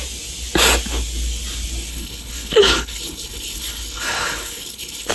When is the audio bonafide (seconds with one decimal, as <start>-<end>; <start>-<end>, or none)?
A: 0.0-1.9